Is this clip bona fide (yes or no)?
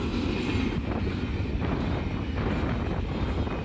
yes